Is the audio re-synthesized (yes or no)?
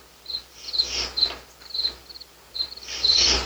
yes